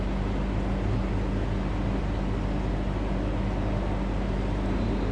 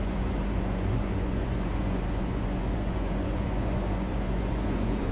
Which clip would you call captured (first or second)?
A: first